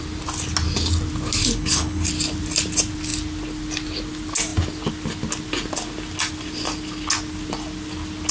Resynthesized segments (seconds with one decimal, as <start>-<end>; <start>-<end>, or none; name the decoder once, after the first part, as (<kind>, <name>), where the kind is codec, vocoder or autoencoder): 1.4-2.1 (codec, HILCodec)